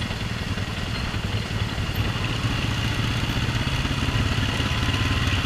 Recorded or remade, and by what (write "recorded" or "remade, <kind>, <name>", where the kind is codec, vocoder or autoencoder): recorded